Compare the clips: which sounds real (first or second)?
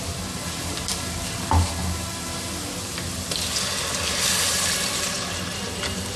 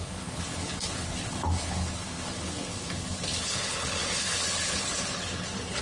first